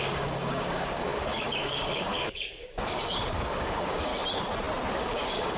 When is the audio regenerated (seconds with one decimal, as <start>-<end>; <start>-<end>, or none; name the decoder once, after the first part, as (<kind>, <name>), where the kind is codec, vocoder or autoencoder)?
0.0-4.1 (codec, DAC); 4.9-5.6